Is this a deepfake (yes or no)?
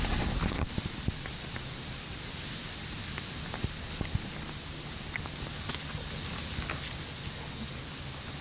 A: no